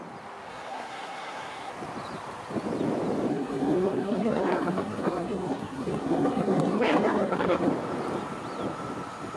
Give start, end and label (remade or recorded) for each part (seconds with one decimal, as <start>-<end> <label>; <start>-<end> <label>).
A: 0.0-0.5 recorded; 0.5-1.7 remade; 1.7-3.3 recorded; 3.3-7.7 remade; 7.7-9.4 recorded